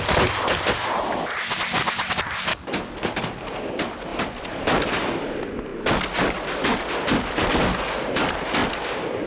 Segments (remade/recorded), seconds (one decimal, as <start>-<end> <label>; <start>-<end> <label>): 0.0-2.5 recorded; 2.5-3.2 remade; 3.2-9.3 recorded